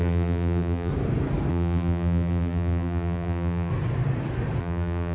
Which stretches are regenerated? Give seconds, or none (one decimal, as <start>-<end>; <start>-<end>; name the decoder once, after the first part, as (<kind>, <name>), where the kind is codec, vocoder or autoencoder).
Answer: 0.0-0.9 (vocoder, BigVGAN v2); 1.5-3.7; 4.6-5.1